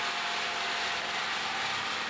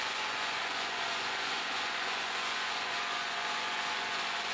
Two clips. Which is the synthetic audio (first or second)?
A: second